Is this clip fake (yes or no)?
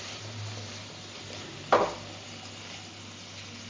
no